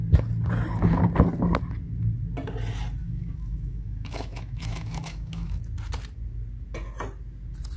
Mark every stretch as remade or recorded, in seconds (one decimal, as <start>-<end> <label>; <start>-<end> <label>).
0.0-3.0 recorded; 3.0-5.6 remade; 5.6-7.8 recorded